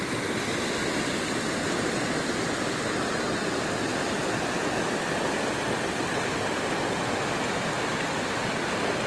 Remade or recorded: recorded